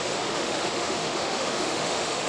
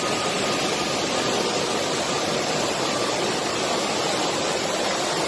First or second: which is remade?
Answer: first